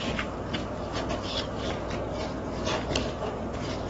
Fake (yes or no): no